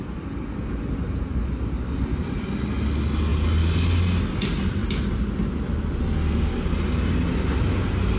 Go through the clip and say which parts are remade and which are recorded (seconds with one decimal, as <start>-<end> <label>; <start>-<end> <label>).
0.0-8.2 recorded